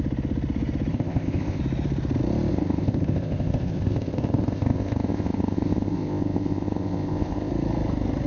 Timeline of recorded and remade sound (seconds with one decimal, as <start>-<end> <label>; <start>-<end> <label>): 0.0-0.9 recorded; 0.9-1.6 remade; 1.6-2.5 recorded; 2.5-7.5 remade; 7.5-8.3 recorded